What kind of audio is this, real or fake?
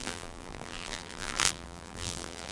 fake